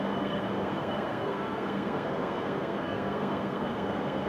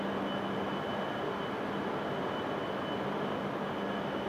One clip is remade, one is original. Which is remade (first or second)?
first